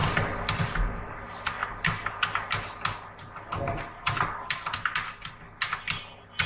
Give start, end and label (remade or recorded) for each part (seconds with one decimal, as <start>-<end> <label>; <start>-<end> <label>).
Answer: 0.0-6.5 recorded